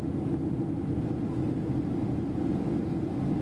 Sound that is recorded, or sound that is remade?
recorded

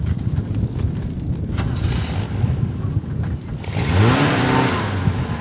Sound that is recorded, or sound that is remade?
recorded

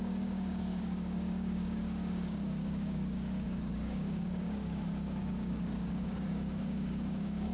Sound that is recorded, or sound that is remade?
remade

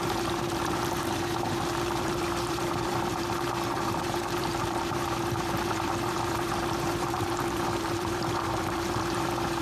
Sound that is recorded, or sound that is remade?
remade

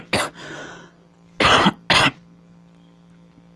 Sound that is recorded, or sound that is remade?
recorded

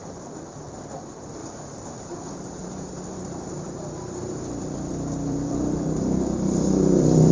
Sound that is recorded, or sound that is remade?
remade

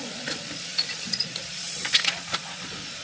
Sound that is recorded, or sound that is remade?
remade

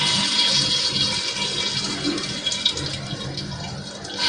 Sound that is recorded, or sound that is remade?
recorded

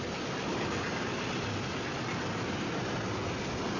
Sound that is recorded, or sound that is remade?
recorded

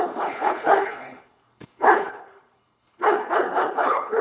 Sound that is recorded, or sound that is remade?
remade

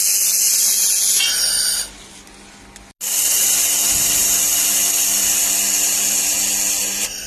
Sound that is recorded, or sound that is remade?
recorded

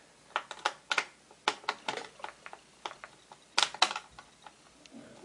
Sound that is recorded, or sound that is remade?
recorded